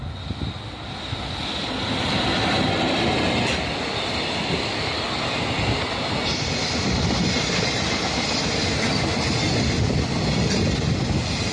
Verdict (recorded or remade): recorded